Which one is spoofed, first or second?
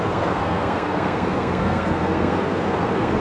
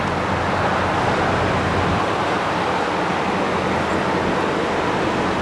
first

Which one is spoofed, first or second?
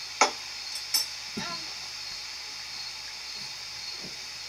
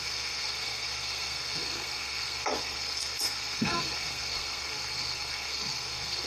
second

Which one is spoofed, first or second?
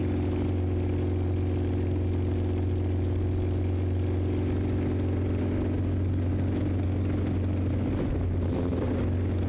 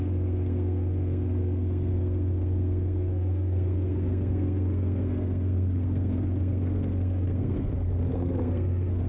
second